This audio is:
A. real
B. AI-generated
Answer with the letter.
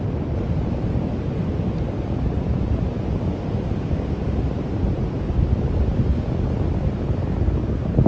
A